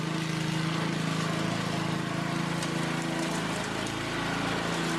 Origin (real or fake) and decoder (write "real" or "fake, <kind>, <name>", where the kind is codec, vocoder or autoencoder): real